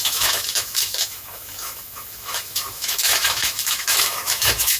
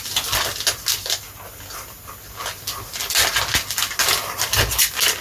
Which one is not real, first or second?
first